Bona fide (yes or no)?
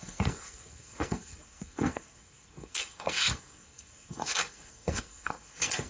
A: no